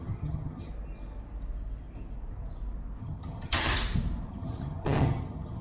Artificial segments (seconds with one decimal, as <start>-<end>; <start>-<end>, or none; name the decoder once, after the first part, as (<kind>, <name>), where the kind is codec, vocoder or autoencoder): 0.0-0.7 (vocoder, HiFi-GAN); 3.0-3.7; 4.3-5.6

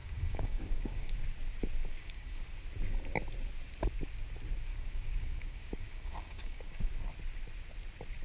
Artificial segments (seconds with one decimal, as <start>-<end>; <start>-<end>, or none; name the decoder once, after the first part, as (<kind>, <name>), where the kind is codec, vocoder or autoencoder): 0.0-1.2 (codec, DAC); 1.9-2.6; 4.7-6.9

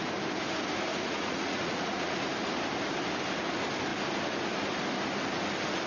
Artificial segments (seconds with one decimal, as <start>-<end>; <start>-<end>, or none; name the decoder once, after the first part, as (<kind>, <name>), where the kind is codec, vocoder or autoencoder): 0.9-2.2 (vocoder, Vocos)

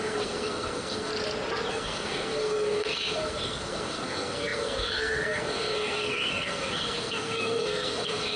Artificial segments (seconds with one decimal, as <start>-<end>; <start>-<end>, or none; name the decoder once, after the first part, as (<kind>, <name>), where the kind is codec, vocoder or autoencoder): 0.0-1.1 (codec, SNAC); 1.7-8.4

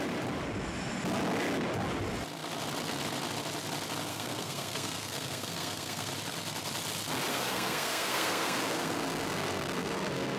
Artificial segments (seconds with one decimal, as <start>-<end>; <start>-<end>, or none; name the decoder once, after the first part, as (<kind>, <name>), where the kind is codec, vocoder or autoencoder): 4.1-6.1 (codec, SNAC); 7.3-10.4

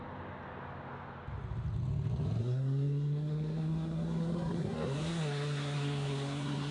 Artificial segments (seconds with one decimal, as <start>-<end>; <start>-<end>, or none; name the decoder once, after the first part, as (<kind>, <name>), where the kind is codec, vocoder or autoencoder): 2.4-6.7 (codec, SNAC)

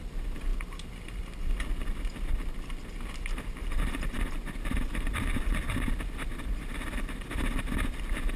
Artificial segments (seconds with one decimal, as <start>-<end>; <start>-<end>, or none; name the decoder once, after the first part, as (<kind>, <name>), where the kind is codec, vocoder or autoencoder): none